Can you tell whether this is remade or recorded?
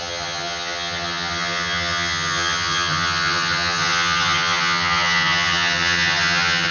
remade